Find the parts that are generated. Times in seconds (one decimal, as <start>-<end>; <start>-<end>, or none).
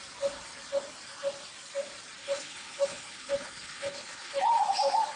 2.2-4.5